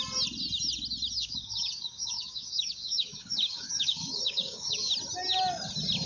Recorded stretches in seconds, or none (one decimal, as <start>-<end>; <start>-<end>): 0.0-1.2; 4.9-6.1